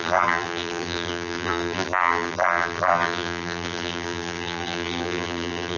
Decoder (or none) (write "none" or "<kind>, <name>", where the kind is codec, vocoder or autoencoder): vocoder, BigVGAN v2